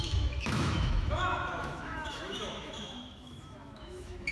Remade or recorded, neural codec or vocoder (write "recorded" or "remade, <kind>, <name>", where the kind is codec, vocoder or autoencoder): remade, autoencoder, DAC-VAE